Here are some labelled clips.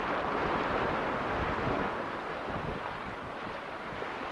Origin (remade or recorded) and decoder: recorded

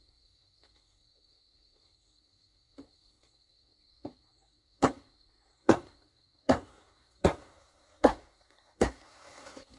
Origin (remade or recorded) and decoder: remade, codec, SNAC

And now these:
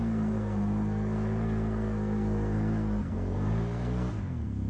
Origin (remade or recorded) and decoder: remade, codec, SNAC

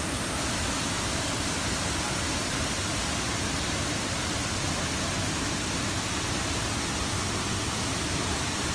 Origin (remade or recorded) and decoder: recorded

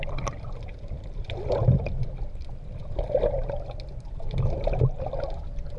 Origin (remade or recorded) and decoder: recorded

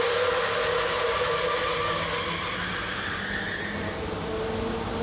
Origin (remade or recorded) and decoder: recorded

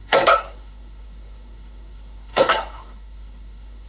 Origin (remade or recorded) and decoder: remade, codec, SNAC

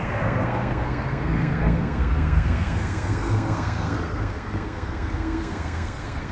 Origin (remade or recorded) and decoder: remade, codec, SNAC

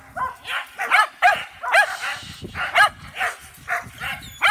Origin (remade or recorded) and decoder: recorded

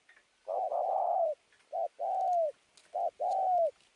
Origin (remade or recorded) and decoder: recorded